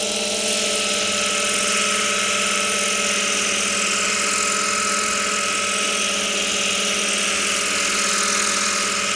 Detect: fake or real real